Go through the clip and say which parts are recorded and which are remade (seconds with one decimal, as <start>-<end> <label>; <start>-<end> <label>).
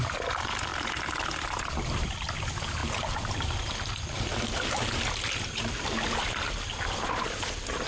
0.0-7.9 recorded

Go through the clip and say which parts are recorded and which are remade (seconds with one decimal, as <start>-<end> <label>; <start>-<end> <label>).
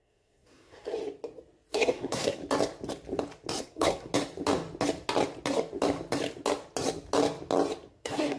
0.0-1.0 remade; 1.0-1.7 recorded; 1.7-2.4 remade; 2.4-3.6 recorded; 3.6-4.1 remade; 4.1-7.9 recorded; 7.9-8.4 remade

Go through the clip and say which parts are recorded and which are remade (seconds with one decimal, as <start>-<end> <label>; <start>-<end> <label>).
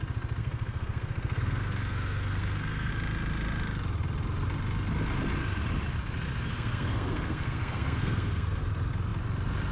0.0-0.4 recorded; 0.4-2.9 remade; 2.9-6.5 recorded; 6.5-8.6 remade; 8.6-9.7 recorded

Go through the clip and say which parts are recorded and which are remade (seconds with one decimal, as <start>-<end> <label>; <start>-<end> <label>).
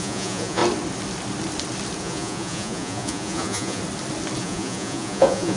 0.0-0.6 remade; 0.6-2.0 recorded; 2.0-3.8 remade; 3.8-4.4 recorded; 4.4-5.6 remade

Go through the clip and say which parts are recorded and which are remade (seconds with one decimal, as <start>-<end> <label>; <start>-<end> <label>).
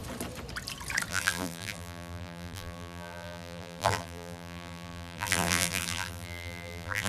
0.0-1.1 recorded; 1.1-7.1 remade